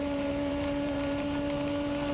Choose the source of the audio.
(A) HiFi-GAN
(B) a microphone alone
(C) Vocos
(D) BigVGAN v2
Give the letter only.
D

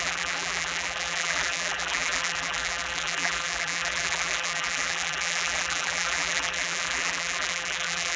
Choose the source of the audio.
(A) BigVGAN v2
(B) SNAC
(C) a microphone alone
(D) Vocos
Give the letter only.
A